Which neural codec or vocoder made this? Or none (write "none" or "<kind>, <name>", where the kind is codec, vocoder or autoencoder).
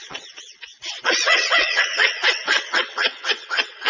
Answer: vocoder, WaveNeXt